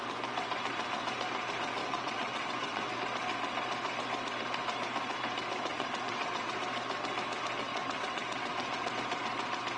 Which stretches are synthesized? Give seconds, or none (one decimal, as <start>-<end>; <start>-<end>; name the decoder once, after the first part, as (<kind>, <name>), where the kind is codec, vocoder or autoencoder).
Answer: 1.8-2.9 (vocoder, WaveNeXt); 5.7-6.5; 7.7-8.9